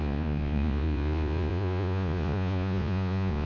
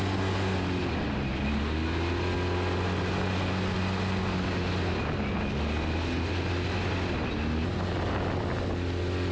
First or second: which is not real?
first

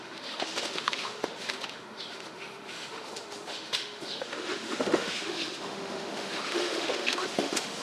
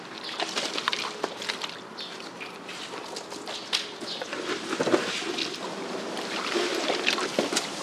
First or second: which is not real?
first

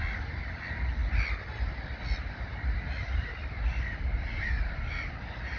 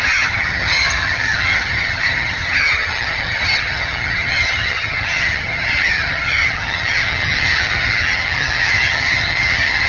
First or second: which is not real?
second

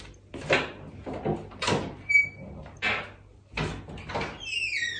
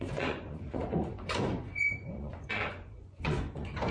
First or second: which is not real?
second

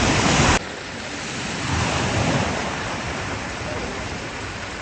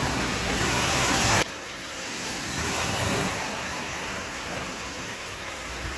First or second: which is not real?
second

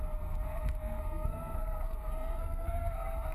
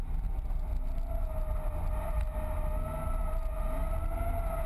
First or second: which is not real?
first